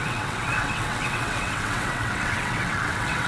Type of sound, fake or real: fake